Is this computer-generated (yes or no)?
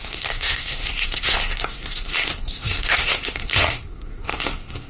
yes